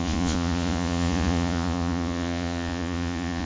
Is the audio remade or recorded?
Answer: remade